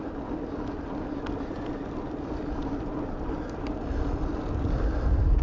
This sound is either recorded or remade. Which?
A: recorded